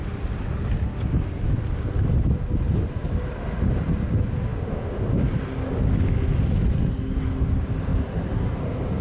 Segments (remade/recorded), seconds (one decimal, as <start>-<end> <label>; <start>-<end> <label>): 0.0-0.5 remade; 0.5-9.0 recorded